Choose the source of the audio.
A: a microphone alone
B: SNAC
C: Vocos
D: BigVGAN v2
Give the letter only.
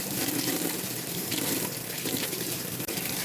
D